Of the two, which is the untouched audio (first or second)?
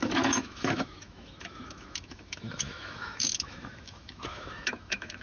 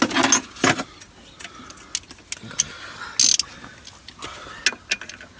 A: second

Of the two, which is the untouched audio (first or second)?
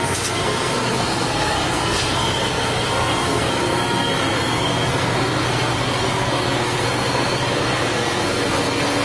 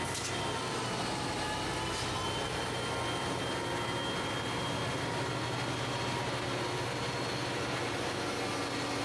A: second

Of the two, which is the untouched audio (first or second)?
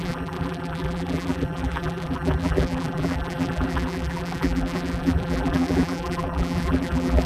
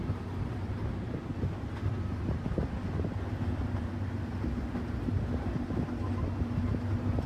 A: second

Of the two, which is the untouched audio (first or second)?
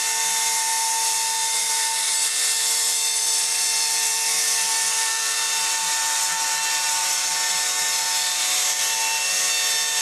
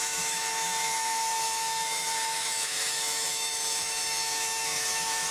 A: first